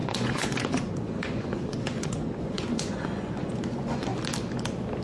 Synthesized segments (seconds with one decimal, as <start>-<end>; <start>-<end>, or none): 0.0-4.1